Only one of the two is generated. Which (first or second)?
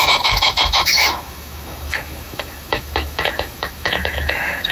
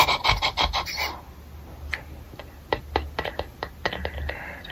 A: first